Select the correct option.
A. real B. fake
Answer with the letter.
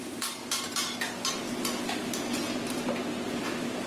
A